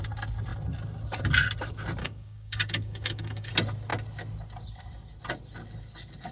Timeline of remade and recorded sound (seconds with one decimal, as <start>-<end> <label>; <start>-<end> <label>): 0.0-2.0 recorded; 2.0-3.5 remade; 3.5-6.3 recorded